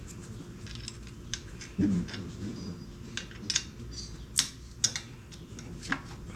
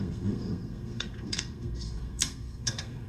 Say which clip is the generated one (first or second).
second